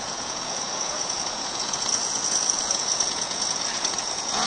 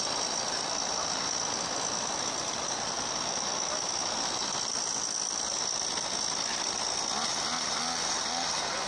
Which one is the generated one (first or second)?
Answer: first